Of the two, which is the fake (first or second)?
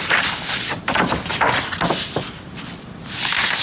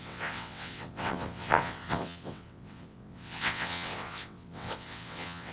second